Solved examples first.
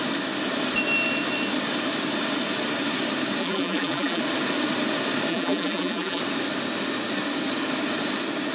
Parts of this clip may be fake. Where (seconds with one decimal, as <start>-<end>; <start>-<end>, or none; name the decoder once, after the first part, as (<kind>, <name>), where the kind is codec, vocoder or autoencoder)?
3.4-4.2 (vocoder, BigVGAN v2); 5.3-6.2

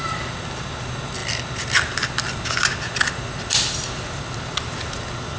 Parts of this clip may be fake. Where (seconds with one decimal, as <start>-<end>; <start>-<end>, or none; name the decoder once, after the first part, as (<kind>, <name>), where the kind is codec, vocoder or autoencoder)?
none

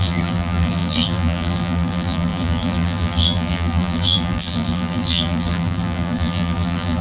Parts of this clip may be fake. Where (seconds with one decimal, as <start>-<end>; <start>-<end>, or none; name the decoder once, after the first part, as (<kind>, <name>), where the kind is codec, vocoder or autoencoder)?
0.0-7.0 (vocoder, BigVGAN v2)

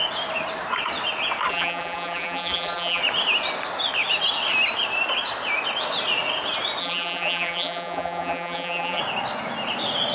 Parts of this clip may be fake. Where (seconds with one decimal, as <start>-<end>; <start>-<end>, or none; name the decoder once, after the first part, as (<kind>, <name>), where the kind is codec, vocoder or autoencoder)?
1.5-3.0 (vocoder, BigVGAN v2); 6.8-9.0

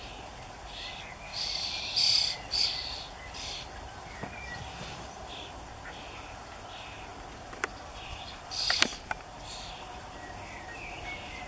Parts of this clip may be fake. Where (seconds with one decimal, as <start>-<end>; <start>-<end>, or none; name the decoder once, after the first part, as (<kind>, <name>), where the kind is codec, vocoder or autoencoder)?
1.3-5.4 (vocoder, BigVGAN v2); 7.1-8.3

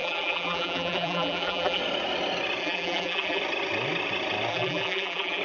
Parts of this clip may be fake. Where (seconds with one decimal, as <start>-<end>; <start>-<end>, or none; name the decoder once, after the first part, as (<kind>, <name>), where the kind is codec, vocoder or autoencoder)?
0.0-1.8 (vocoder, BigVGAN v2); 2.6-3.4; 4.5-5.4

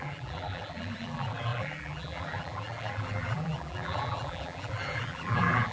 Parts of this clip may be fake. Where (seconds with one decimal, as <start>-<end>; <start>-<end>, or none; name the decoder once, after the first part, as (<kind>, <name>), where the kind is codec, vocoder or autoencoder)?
0.0-5.7 (vocoder, BigVGAN v2)